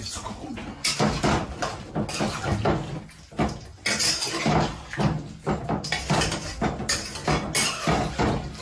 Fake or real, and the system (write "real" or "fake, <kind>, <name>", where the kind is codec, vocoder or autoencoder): real